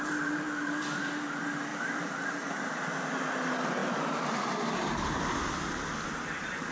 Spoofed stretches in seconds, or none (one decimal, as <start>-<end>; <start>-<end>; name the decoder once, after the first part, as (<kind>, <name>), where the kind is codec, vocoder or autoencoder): 1.7-2.8 (vocoder, BigVGAN v2); 3.8-4.5